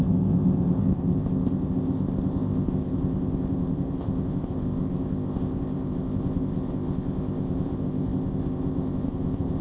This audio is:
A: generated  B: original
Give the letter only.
A